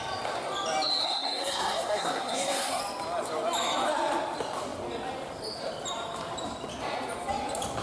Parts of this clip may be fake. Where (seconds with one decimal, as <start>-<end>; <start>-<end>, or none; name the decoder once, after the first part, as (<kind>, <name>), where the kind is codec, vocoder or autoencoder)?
1.0-2.8 (codec, SNAC)